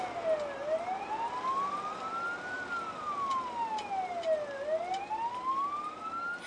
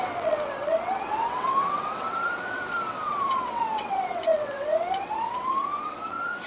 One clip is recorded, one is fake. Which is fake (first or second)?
second